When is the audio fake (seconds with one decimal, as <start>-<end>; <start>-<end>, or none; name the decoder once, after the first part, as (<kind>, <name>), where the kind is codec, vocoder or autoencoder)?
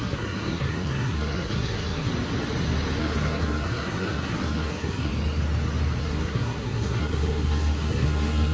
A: 0.0-2.1 (codec, SNAC); 3.0-5.1; 6.0-8.5